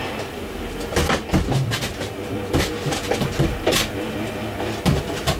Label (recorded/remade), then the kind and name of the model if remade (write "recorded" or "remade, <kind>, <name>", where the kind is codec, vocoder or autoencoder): recorded